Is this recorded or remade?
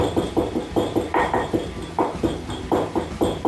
recorded